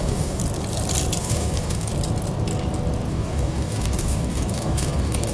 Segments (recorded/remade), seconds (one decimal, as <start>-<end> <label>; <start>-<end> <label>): 0.0-0.4 remade; 0.4-1.2 recorded; 1.2-1.9 remade; 1.9-3.1 recorded; 3.1-5.3 remade